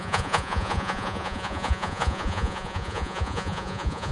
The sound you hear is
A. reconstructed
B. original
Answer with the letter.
A